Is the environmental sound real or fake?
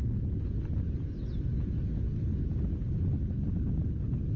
real